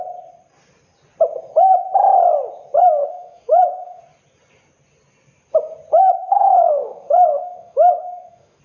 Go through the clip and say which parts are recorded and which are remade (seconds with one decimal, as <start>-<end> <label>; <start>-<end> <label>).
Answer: 0.0-3.0 recorded; 3.0-4.0 remade; 4.0-6.2 recorded; 6.2-8.6 remade